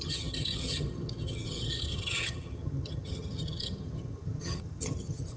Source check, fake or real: fake